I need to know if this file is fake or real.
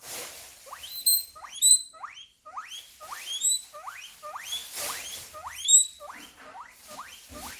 real